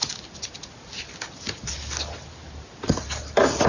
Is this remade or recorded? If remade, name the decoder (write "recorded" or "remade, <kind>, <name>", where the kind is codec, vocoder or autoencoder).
recorded